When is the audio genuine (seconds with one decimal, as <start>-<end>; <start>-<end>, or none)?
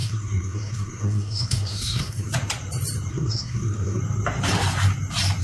2.3-3.1; 4.0-5.4